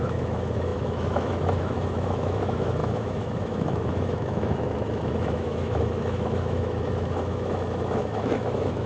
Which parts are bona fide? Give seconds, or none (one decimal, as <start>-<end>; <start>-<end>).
none